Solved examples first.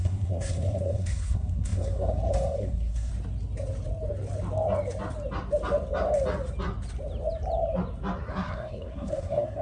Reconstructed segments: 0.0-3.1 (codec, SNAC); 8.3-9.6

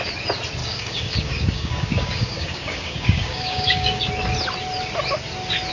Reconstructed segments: 0.6-4.0 (codec, DAC)

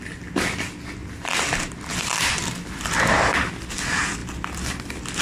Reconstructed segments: none

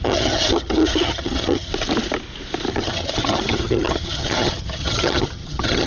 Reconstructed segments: 0.0-1.7 (vocoder, HiFi-GAN); 2.7-5.9

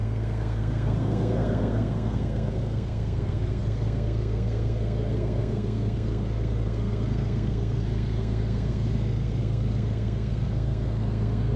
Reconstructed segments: 0.0-11.6 (codec, SNAC)

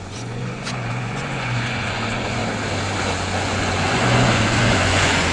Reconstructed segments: 0.0-2.4 (vocoder, Vocos); 3.0-5.3

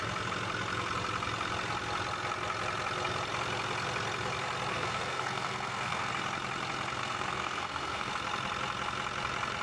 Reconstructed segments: 4.7-6.1 (codec, SNAC); 7.0-8.1

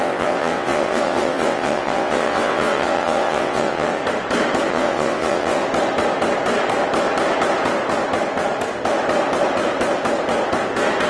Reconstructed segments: 0.0-4.0 (vocoder, WaveNeXt); 4.7-5.6